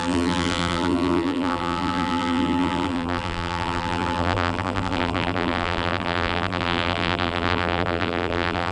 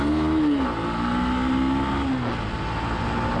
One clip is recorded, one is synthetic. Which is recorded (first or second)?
second